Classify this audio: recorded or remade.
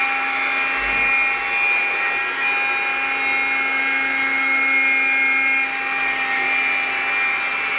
recorded